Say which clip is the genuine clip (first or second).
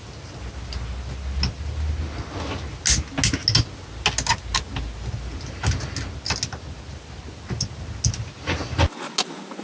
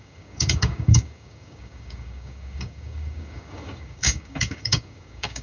first